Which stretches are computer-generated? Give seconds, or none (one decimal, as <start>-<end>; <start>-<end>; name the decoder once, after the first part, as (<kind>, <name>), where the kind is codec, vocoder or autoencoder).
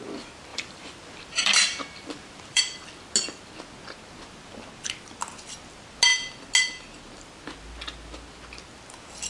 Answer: 0.5-2.6 (vocoder, BigVGAN v2)